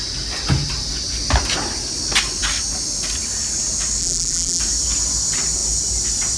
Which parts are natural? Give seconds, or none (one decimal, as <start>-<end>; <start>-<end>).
0.0-4.0; 4.6-6.4